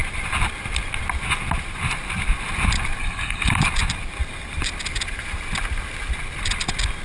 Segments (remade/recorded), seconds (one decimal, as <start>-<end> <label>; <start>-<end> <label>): 0.0-3.0 recorded; 3.0-3.6 remade; 3.6-7.0 recorded